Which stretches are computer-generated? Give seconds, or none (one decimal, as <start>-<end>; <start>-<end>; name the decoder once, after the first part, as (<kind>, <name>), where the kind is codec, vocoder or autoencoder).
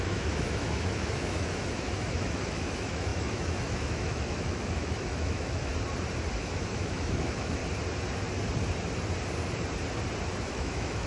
0.0-5.7 (autoencoder, DAC-VAE); 6.4-7.6; 10.5-11.1